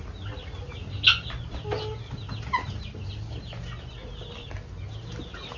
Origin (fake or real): real